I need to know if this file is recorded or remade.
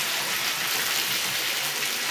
recorded